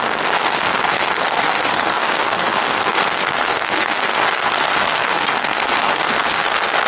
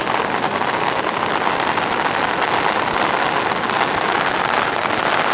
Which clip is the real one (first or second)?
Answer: second